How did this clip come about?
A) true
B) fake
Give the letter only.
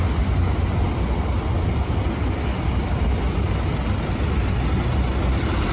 A